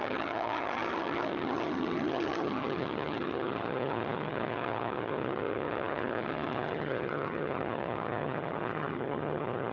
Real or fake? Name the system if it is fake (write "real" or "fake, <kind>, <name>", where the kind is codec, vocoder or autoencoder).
fake, vocoder, HiFi-GAN